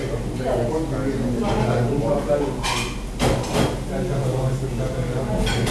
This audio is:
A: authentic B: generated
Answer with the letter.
A